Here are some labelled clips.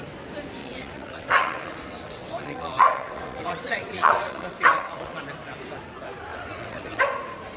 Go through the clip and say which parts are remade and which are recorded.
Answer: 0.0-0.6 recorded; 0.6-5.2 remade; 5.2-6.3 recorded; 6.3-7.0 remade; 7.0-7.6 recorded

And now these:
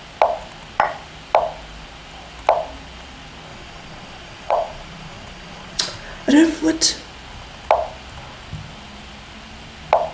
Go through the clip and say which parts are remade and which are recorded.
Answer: 0.0-3.5 recorded; 3.5-6.3 remade; 6.3-10.1 recorded

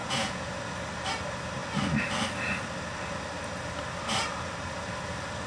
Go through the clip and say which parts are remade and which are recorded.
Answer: 0.0-0.5 remade; 0.5-5.5 recorded

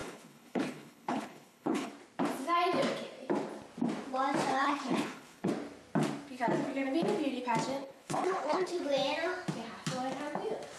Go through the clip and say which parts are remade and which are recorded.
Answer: 0.0-1.9 remade; 1.9-4.5 recorded; 4.5-5.5 remade; 5.5-7.8 recorded; 7.8-8.8 remade; 8.8-10.8 recorded